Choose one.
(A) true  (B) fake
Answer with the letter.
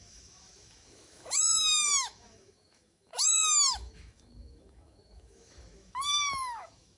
B